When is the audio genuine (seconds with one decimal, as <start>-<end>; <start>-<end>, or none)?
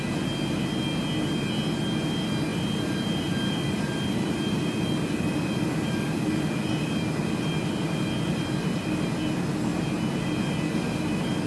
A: 0.0-2.5; 6.0-11.5